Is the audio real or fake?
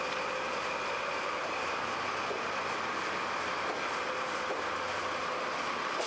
real